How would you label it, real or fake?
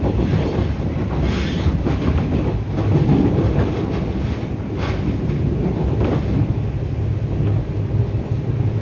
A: real